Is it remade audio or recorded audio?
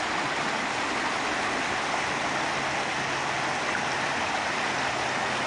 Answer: recorded